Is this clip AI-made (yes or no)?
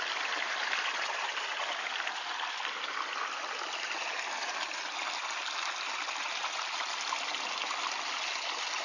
no